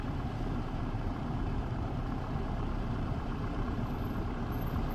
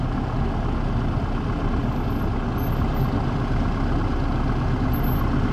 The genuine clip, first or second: second